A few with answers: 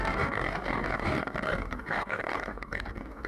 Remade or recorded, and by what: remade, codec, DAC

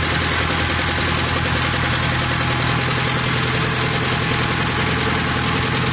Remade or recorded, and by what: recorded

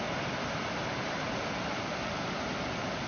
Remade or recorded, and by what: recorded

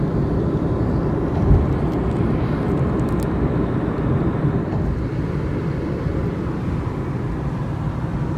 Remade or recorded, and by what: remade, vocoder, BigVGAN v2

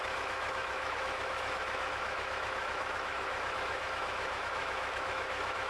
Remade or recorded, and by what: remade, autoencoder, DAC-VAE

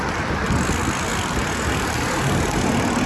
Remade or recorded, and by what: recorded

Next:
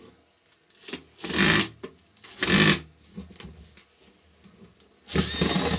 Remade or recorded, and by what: recorded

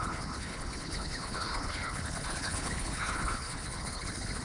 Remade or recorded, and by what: remade, codec, HILCodec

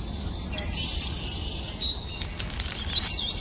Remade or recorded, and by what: recorded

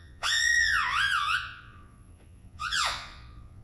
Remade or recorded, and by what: remade, vocoder, Vocos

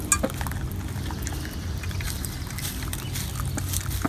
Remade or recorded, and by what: recorded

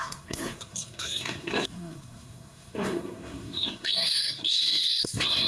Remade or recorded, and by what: remade, codec, SNAC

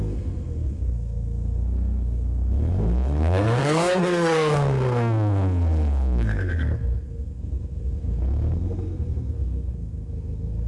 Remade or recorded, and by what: remade, codec, SNAC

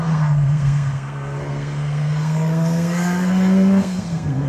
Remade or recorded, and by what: remade, codec, SNAC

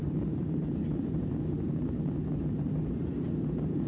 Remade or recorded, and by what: remade, vocoder, BigVGAN v2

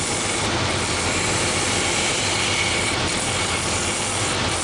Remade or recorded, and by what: recorded